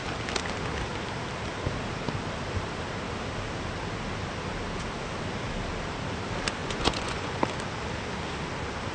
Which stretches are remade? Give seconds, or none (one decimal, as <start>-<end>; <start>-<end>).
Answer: 6.6-7.4